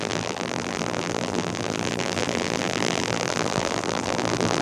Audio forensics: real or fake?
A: fake